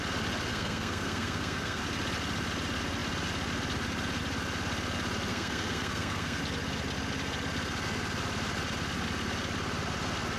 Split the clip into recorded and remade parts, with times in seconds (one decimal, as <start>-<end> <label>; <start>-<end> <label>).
0.0-0.5 recorded; 0.5-1.8 remade; 1.8-5.3 recorded; 5.3-6.4 remade; 6.4-10.4 recorded

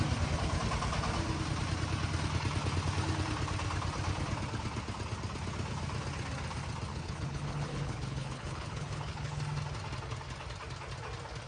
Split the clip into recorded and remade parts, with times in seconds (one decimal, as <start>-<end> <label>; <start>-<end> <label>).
0.0-6.9 recorded; 6.9-9.3 remade; 9.3-11.5 recorded

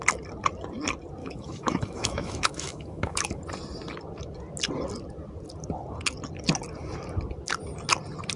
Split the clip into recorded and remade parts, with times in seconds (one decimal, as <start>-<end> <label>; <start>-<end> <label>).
0.0-1.2 recorded; 1.2-3.4 remade; 3.4-8.4 recorded

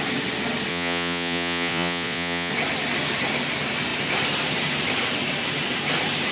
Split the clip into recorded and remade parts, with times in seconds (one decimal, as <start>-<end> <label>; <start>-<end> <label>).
0.0-0.7 recorded; 0.7-2.5 remade; 2.5-6.3 recorded

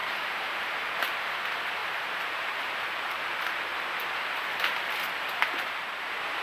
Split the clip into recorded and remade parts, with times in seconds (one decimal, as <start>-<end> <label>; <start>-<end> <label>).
0.0-1.4 remade; 1.4-1.8 recorded; 1.8-3.3 remade; 3.3-6.4 recorded

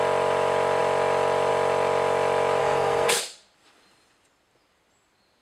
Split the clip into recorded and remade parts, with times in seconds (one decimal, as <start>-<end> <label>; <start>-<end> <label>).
0.0-2.6 recorded; 2.6-3.2 remade; 3.2-5.4 recorded

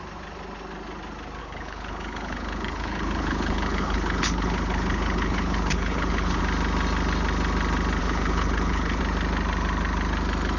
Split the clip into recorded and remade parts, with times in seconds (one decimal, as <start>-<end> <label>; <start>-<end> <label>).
0.0-1.4 recorded; 1.4-6.4 remade; 6.4-8.0 recorded; 8.0-9.0 remade; 9.0-10.6 recorded

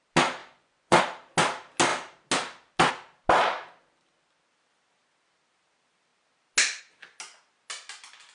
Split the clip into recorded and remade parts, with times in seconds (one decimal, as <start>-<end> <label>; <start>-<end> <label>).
0.0-0.4 recorded; 0.4-1.0 remade; 1.0-8.3 recorded